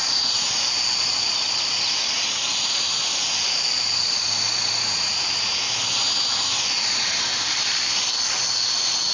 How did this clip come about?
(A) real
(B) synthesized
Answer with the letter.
A